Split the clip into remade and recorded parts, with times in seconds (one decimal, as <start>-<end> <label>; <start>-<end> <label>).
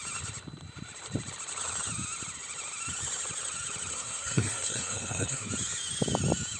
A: 0.0-3.9 recorded; 3.9-5.5 remade; 5.5-6.6 recorded